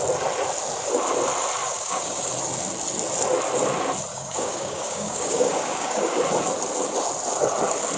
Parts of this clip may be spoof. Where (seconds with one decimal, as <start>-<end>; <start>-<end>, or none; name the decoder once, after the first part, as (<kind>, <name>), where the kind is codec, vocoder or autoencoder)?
1.6-2.3 (codec, DAC); 4.1-6.2